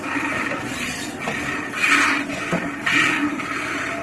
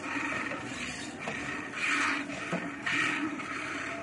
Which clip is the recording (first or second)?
first